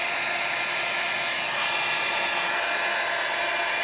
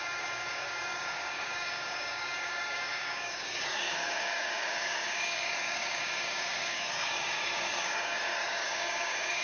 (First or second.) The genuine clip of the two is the first